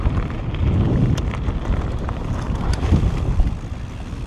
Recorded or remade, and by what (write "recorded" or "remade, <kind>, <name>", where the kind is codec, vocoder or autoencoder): recorded